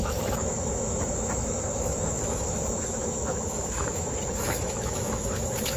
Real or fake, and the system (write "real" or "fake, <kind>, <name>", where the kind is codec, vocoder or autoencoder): fake, autoencoder, DAC-VAE